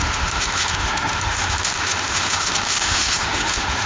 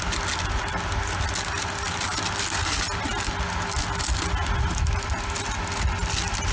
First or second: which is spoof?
first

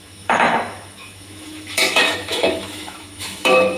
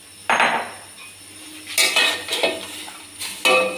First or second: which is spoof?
first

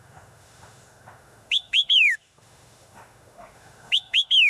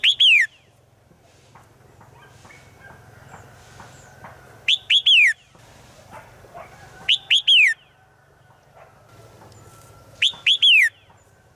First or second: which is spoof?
first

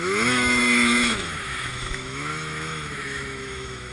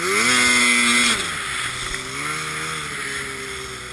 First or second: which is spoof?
first